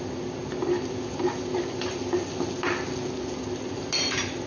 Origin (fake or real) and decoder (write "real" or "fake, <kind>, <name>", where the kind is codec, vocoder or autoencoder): real